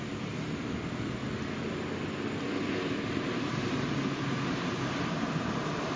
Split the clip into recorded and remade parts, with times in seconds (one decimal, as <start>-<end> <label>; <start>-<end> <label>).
0.0-1.2 remade; 1.2-3.1 recorded; 3.1-6.0 remade